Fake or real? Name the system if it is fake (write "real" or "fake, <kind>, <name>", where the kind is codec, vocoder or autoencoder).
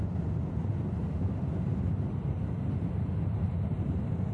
real